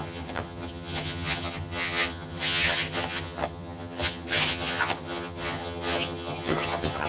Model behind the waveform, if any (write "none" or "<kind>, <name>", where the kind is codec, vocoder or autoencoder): vocoder, HiFi-GAN